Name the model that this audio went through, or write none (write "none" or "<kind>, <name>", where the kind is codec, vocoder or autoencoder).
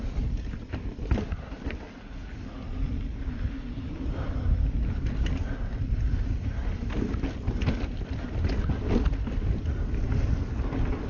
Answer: none